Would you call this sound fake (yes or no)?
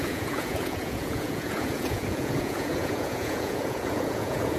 yes